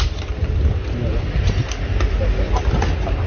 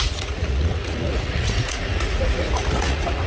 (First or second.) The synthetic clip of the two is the second